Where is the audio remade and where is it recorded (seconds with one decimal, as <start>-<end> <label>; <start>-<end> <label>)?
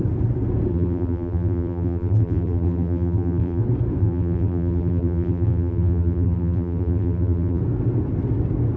0.0-0.7 recorded; 0.7-3.6 remade; 3.6-4.0 recorded; 4.0-7.6 remade; 7.6-8.8 recorded